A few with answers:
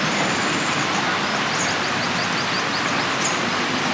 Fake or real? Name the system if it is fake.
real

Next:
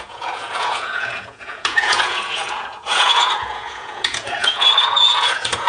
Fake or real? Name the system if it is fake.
fake, vocoder, Vocos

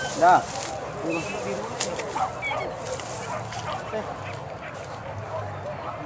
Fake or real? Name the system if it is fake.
real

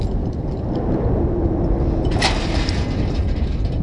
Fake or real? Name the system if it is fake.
real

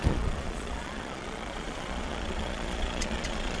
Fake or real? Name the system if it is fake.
fake, vocoder, Vocos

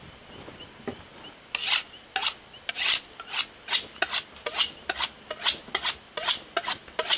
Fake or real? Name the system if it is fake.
real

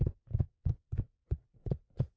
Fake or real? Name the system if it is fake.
fake, vocoder, WaveNeXt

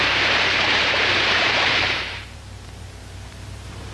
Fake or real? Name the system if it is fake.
fake, vocoder, BigVGAN v2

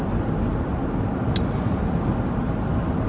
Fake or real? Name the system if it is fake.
real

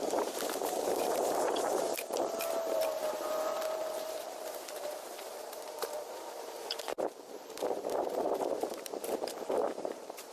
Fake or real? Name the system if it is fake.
fake, vocoder, BigVGAN v2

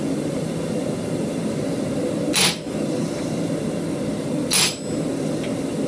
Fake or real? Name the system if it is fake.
real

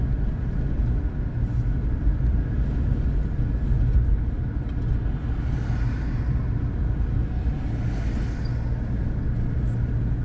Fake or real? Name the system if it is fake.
real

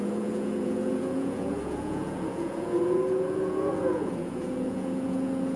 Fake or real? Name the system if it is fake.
fake, vocoder, Vocos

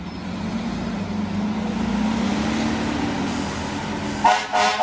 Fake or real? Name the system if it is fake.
real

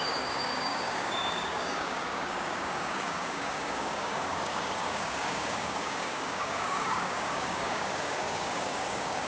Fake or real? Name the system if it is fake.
fake, codec, DAC